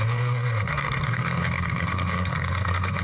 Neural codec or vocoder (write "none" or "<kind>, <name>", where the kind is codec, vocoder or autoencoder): codec, SNAC